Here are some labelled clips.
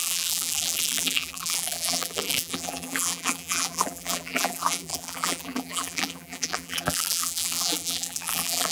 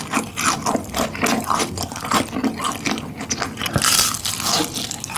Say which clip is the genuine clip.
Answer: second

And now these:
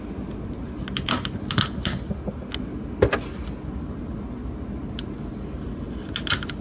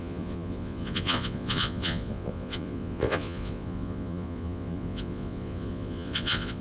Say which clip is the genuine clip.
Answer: first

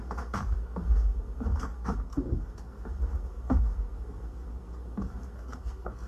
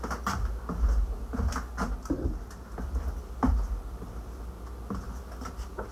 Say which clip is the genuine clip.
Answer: second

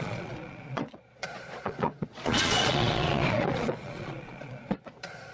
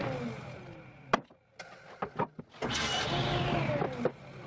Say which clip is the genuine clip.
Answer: second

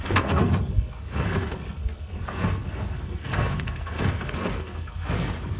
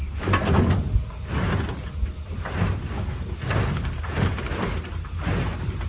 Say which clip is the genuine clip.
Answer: second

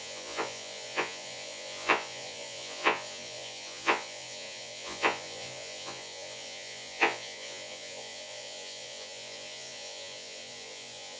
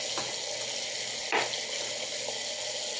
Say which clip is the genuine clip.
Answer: second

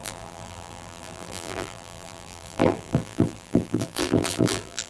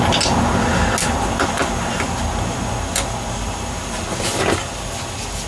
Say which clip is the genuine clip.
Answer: second